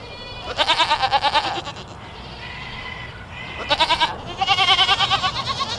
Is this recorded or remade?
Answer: remade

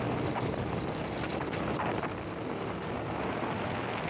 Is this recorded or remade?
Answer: recorded